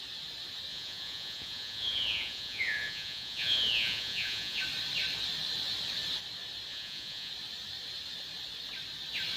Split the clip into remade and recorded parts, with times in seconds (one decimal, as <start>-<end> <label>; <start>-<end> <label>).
0.0-0.7 recorded; 0.7-4.6 remade; 4.6-6.7 recorded; 6.7-7.3 remade; 7.3-9.4 recorded

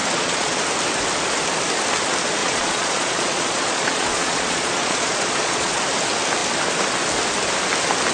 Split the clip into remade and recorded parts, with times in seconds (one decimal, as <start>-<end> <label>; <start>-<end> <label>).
0.0-0.6 remade; 0.6-2.4 recorded; 2.4-5.8 remade; 5.8-8.1 recorded